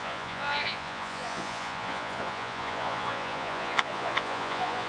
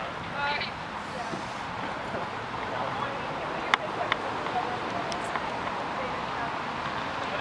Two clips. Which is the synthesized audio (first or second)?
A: first